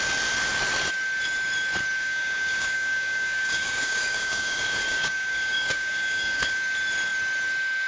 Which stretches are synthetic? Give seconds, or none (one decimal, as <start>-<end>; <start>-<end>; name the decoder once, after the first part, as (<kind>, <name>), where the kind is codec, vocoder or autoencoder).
2.0-6.6 (codec, DAC)